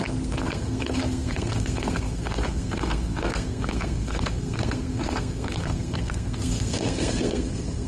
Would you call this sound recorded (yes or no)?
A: no